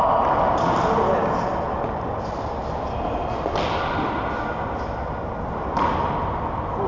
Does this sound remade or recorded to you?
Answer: recorded